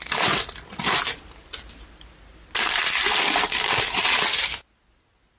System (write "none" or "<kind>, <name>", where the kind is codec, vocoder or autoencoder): none